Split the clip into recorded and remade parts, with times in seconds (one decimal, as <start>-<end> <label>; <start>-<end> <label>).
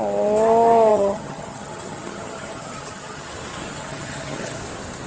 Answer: 0.0-0.9 recorded; 0.9-3.3 remade; 3.3-3.7 recorded; 3.7-4.6 remade; 4.6-5.1 recorded